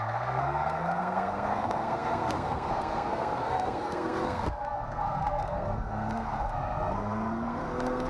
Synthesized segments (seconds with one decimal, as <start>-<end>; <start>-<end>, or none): 0.0-8.1